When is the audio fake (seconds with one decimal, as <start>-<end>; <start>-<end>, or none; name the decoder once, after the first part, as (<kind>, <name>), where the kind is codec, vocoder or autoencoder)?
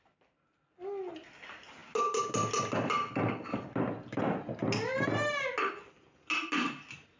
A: none